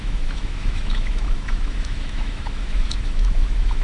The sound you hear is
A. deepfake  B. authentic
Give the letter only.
A